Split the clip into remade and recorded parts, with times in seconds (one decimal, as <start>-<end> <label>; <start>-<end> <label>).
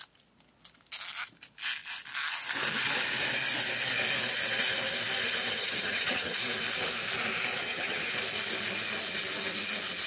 0.0-5.6 recorded; 5.6-6.4 remade; 6.4-7.6 recorded; 7.6-8.1 remade; 8.1-10.1 recorded